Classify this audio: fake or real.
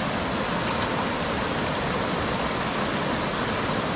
real